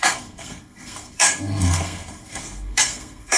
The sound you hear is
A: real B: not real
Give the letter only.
B